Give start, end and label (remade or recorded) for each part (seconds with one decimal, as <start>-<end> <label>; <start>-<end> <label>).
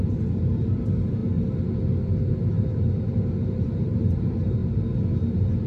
0.0-1.2 remade; 1.2-2.2 recorded; 2.2-4.6 remade; 4.6-5.3 recorded; 5.3-5.7 remade